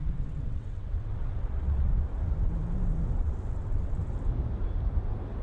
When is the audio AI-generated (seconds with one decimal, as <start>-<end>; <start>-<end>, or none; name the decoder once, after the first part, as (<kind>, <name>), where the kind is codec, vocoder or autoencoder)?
0.0-1.9 (vocoder, WaveNeXt); 3.1-4.0